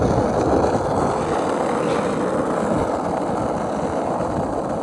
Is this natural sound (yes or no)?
yes